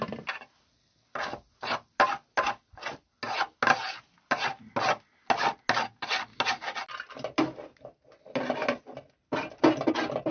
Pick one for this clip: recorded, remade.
recorded